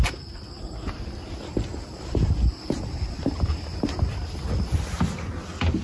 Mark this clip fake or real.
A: real